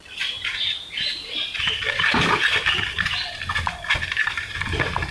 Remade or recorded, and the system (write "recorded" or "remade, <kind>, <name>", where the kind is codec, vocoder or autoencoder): recorded